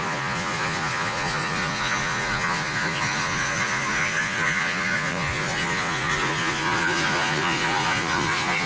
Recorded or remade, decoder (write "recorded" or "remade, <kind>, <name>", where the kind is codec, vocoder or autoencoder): remade, vocoder, Vocos